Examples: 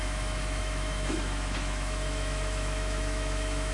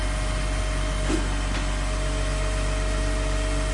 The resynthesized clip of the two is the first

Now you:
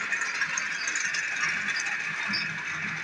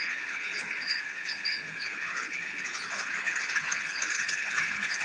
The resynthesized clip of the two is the second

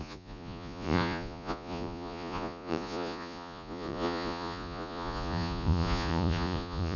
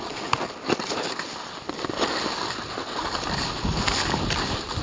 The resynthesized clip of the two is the first